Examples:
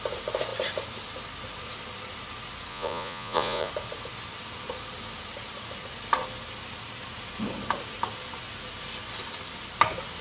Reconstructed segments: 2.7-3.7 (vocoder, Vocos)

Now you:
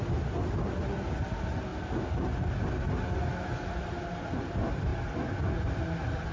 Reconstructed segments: none

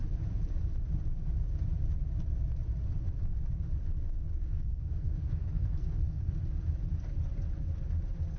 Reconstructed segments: 4.3-6.3 (codec, SNAC)

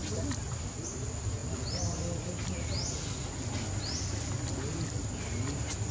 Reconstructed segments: none

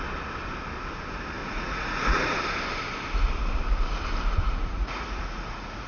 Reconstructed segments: 1.4-2.4 (vocoder, Vocos); 4.4-5.9